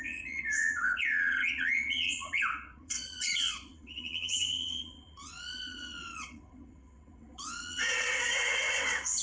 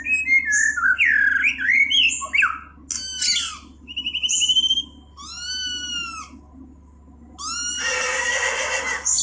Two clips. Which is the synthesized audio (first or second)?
first